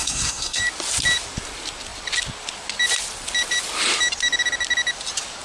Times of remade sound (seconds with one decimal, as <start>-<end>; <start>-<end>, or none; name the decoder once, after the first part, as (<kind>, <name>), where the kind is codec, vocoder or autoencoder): 0.0-0.6 (codec, SNAC)